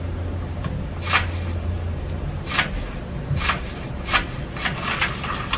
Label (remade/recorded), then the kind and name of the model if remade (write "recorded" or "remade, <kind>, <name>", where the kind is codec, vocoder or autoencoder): recorded